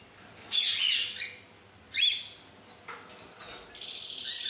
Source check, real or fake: real